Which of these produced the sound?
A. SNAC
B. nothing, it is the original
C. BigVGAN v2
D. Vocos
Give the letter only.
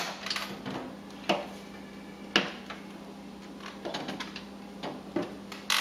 B